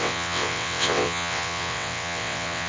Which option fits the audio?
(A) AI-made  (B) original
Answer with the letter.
A